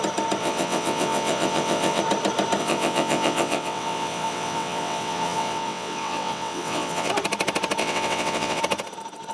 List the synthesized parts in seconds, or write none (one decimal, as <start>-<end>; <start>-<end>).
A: 0.4-2.0; 2.6-7.1; 7.8-8.6